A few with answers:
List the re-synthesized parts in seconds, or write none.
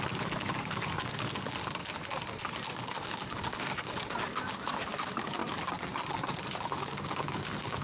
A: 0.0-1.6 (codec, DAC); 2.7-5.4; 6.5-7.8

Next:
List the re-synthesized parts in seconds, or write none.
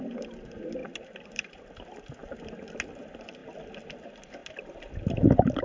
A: none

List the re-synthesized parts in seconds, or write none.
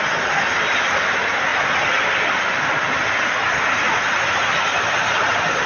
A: none